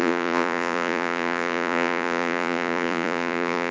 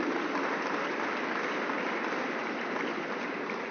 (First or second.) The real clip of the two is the second